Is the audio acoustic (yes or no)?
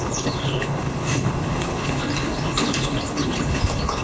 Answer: no